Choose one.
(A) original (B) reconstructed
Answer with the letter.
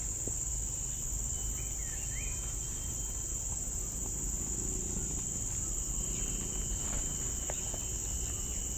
A